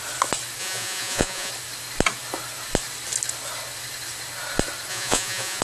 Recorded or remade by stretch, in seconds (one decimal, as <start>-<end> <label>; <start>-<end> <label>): 0.0-0.6 recorded; 0.6-1.5 remade; 1.5-4.9 recorded; 4.9-5.6 remade